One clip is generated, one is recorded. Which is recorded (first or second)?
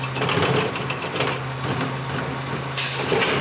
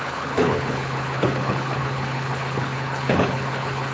first